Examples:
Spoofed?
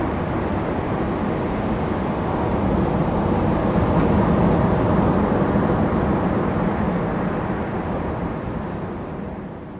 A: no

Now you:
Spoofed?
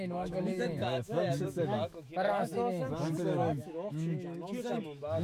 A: yes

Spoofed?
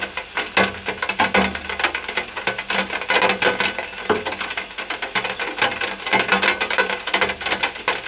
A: no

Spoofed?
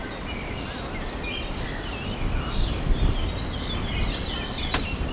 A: no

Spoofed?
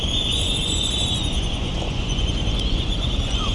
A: yes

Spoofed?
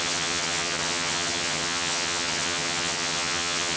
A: yes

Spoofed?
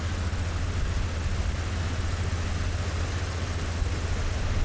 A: no